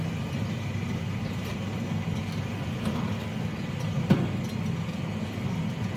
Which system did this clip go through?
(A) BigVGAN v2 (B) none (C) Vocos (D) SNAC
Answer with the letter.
B